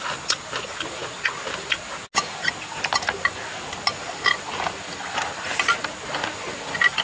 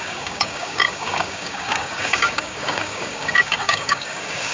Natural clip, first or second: first